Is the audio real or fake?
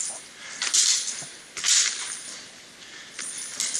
real